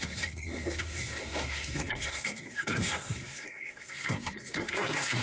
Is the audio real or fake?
fake